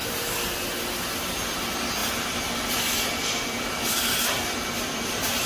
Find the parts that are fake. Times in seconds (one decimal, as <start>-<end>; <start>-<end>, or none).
2.0-5.5